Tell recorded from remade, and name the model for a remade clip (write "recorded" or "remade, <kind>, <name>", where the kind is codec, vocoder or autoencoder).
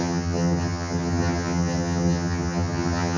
remade, vocoder, HiFi-GAN